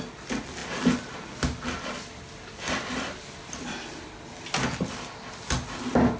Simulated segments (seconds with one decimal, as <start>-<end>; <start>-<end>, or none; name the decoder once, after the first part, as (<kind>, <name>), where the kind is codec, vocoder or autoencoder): none